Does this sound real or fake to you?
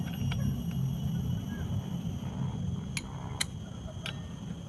real